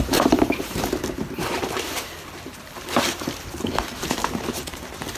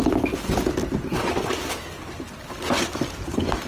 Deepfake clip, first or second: first